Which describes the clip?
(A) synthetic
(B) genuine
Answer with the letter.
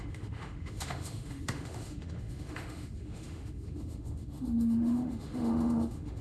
A